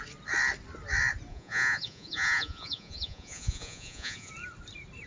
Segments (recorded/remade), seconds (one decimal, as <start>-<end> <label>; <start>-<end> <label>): 0.0-1.3 recorded; 1.3-4.3 remade; 4.3-5.1 recorded